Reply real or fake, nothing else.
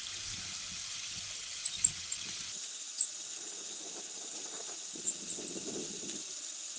real